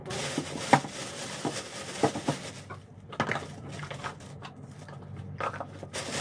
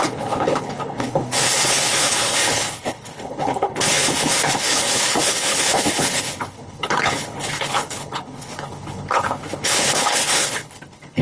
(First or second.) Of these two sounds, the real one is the first